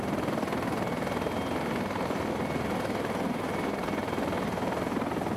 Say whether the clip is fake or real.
real